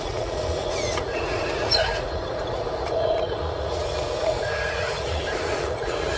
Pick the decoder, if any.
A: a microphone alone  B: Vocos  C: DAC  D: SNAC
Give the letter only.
B